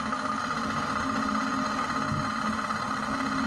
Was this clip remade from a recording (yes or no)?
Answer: no